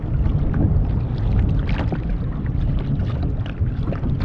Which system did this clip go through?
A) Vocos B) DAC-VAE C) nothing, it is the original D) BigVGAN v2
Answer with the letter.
C